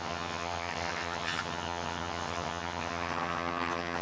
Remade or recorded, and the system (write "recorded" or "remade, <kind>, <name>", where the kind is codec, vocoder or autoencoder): remade, vocoder, HiFi-GAN